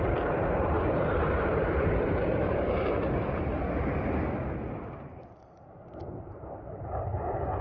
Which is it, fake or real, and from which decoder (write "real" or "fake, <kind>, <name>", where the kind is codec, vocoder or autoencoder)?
fake, vocoder, BigVGAN v2